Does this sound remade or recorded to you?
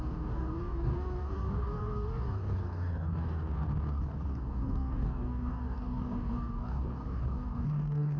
remade